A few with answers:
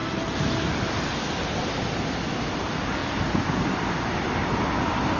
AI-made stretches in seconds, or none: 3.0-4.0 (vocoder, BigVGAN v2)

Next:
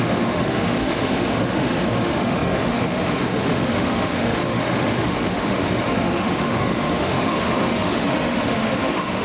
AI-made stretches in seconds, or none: 0.0-9.2 (autoencoder, DAC-VAE)

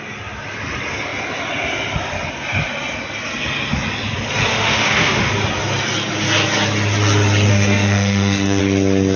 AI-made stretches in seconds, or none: 4.5-5.3 (autoencoder, DAC-VAE); 7.5-8.6

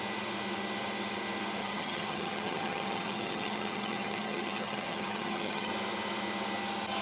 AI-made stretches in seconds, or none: 1.6-5.7 (vocoder, HiFi-GAN)

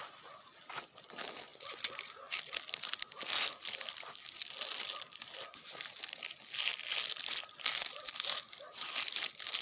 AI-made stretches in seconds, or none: none